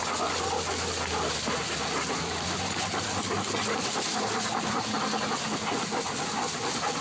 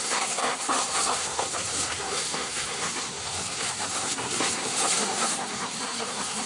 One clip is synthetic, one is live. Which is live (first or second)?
first